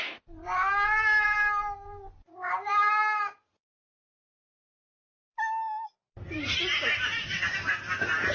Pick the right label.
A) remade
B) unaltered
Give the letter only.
B